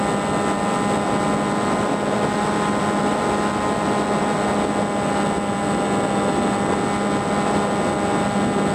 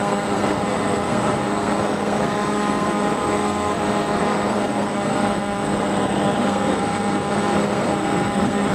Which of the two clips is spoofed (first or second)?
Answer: second